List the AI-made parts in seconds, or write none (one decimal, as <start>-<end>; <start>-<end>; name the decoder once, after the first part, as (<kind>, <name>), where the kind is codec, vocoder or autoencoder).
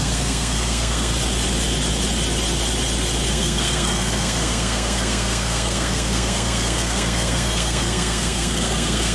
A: 0.0-1.1 (codec, SNAC); 3.3-9.1